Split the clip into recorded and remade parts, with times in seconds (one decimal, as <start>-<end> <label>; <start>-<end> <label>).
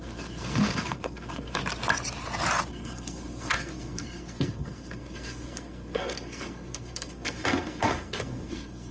0.0-1.6 remade; 1.6-2.7 recorded; 2.7-8.9 remade